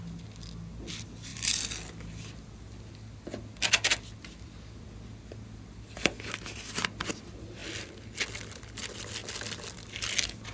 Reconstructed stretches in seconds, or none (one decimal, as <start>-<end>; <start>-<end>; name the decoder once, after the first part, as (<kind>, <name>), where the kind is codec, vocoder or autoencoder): none